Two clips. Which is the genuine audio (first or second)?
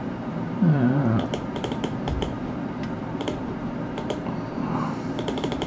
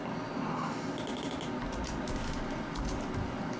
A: second